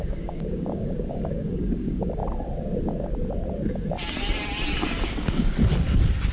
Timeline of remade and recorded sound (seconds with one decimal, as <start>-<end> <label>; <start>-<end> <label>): 0.0-2.2 remade; 2.2-6.3 recorded